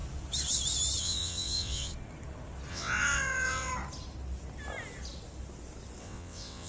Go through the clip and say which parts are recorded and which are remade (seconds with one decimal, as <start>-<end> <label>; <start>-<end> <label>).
0.0-1.0 recorded; 1.0-1.9 remade; 1.9-2.7 recorded; 2.7-3.7 remade; 3.7-6.0 recorded; 6.0-6.7 remade